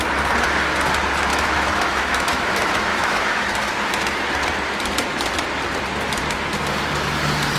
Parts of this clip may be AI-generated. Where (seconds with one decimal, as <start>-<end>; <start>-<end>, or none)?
1.3-3.9